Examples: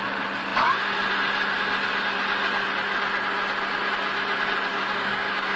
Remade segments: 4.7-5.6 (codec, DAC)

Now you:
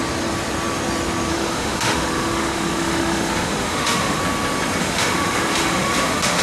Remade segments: 1.3-4.2 (autoencoder, DAC-VAE); 4.8-6.4